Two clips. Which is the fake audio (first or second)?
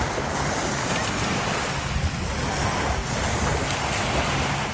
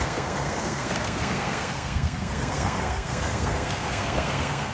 second